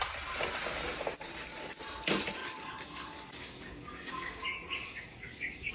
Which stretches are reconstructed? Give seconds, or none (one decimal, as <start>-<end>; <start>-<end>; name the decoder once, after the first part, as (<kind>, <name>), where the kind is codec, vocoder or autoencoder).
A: 2.4-5.7 (codec, DAC)